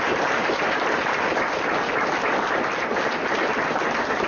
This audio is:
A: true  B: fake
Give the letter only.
A